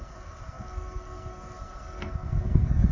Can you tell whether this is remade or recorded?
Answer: remade